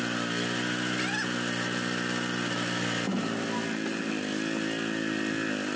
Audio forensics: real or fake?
real